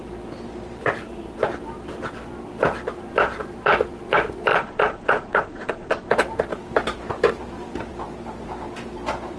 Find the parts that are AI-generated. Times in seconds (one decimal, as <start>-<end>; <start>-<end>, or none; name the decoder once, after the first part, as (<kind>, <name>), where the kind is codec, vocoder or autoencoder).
4.5-6.1 (vocoder, Vocos)